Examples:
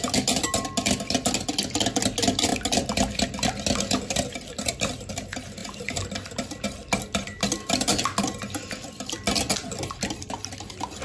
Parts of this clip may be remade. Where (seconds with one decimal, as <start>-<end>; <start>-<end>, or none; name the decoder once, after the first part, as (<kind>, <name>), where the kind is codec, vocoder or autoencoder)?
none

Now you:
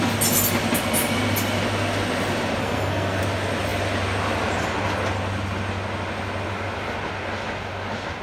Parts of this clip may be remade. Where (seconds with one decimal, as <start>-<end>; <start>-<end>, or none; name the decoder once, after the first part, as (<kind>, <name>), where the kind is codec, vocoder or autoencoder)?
2.6-3.2 (codec, SNAC)

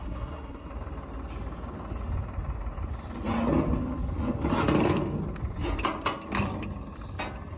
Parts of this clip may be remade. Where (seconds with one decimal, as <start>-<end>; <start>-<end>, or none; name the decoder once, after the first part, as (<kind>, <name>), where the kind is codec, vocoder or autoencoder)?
0.0-0.7 (codec, SNAC)

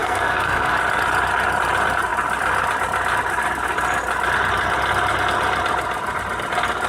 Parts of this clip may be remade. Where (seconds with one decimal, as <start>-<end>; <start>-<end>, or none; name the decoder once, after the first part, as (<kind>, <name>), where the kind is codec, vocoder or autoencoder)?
0.0-0.7 (codec, SNAC)

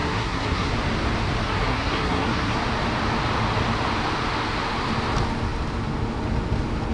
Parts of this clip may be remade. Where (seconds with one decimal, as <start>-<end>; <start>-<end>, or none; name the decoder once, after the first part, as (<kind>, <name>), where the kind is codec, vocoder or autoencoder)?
0.0-0.7 (codec, SNAC); 1.4-2.6

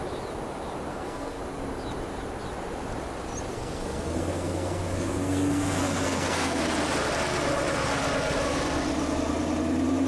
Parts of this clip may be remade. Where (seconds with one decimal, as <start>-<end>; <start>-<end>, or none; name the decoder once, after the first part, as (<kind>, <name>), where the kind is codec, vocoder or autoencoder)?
0.9-1.4 (codec, SNAC); 3.5-6.6